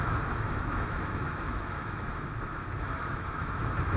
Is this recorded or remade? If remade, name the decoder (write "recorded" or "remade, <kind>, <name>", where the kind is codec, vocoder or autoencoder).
remade, autoencoder, DAC-VAE